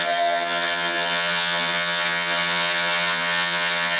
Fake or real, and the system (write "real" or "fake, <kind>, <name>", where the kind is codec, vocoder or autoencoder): fake, vocoder, HiFi-GAN